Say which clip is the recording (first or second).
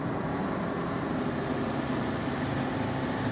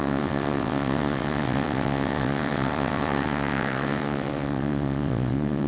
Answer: first